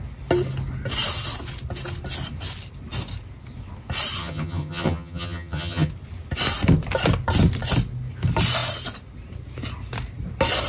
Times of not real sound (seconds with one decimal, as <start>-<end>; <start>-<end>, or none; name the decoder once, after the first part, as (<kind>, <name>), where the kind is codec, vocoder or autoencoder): 4.2-5.9 (vocoder, HiFi-GAN)